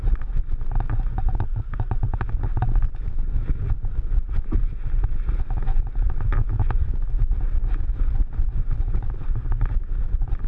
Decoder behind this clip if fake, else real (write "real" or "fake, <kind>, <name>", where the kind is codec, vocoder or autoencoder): real